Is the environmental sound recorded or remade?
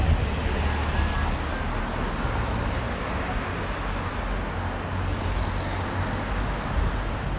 recorded